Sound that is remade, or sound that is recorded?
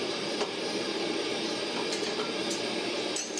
remade